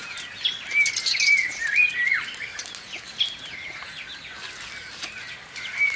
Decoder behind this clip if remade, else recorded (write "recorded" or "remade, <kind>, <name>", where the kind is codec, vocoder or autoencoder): recorded